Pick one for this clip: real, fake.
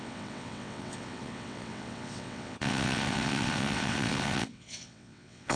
fake